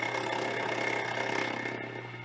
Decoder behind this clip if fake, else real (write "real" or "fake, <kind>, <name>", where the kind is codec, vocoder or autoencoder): real